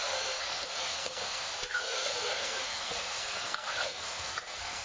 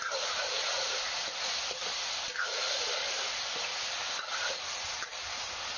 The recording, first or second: second